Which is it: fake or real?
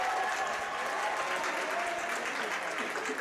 real